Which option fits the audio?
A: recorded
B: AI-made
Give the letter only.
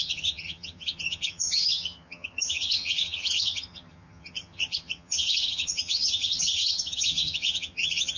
B